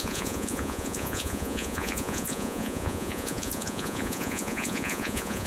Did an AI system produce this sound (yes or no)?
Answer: yes